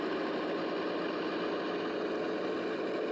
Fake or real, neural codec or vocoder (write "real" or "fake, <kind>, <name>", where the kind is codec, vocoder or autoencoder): real